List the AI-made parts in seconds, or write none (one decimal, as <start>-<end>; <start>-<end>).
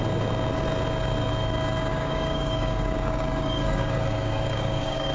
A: 1.9-5.1